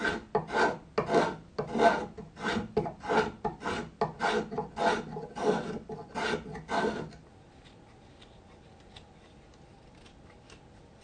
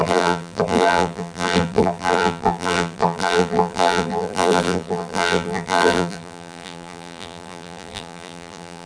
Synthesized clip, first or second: second